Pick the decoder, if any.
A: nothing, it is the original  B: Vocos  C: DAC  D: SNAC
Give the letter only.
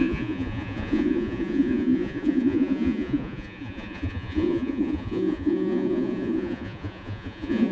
B